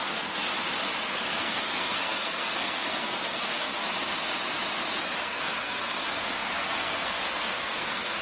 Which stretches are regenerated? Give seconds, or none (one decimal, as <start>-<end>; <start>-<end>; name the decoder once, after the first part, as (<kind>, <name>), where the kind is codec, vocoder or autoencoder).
0.0-0.5 (codec, SNAC); 1.1-3.8; 5.2-8.2

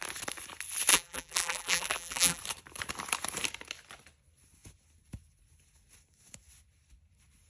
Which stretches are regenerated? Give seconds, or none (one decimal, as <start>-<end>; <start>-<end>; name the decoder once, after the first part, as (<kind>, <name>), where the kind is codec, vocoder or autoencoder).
0.9-2.4 (vocoder, BigVGAN v2)

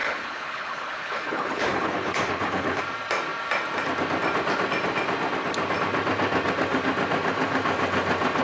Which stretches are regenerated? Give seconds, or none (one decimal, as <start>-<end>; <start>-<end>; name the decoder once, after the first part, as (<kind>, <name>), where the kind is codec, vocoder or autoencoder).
0.0-2.8 (codec, HILCodec)

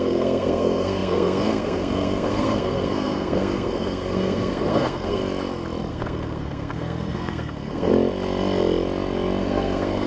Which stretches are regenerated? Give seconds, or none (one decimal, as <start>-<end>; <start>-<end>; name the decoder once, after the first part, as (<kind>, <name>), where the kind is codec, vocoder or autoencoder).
0.0-5.2 (codec, SNAC); 5.9-7.9; 9.4-10.1

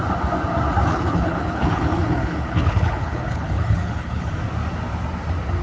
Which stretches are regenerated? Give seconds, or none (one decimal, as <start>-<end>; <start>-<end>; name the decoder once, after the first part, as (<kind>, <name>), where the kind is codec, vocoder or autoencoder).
0.9-4.3 (codec, HILCodec)

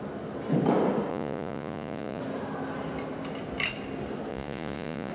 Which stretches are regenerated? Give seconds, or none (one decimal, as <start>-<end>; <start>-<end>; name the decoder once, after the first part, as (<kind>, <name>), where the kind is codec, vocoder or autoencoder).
1.1-2.2 (vocoder, Vocos); 4.3-5.1